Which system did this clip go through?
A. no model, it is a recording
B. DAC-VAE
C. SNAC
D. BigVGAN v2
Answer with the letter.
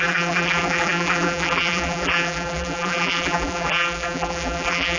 D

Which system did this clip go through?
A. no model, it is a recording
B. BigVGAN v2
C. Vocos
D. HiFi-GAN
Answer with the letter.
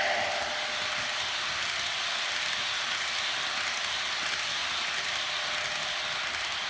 A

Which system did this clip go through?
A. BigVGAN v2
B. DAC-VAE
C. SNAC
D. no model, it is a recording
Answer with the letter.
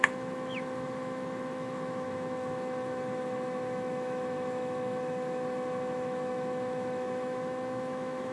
B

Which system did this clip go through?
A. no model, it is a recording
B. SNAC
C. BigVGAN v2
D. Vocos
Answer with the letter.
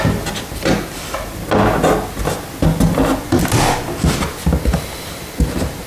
A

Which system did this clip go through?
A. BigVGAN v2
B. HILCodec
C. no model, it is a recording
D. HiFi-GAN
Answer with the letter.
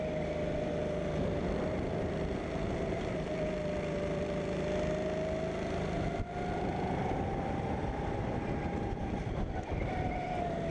C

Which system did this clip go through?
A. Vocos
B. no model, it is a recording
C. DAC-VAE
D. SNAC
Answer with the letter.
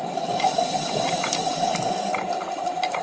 B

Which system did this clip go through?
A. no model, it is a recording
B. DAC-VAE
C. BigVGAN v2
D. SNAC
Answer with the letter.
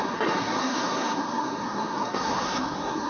D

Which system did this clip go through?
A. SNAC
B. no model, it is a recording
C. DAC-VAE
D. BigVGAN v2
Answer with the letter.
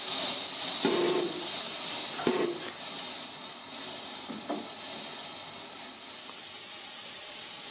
B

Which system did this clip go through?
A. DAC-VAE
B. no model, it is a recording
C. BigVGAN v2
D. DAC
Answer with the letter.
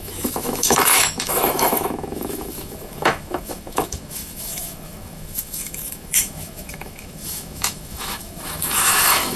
A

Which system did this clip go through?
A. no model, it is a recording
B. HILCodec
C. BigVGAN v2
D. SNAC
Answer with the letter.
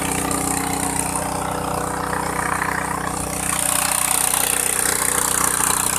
A